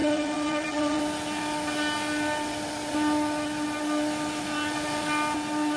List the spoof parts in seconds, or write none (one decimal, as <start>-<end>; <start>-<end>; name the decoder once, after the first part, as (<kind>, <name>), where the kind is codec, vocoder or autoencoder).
0.0-1.0 (vocoder, Vocos)